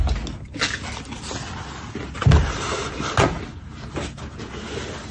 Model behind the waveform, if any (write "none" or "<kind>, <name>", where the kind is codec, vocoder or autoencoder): none